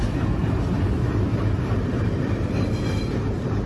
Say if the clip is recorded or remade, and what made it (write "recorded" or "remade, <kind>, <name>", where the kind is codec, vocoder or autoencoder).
remade, vocoder, BigVGAN v2